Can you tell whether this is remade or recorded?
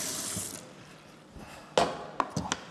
recorded